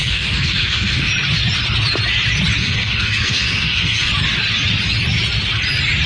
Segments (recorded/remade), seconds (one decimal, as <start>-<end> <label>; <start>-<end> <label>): 0.0-1.1 remade; 1.1-2.6 recorded; 2.6-4.1 remade; 4.1-6.1 recorded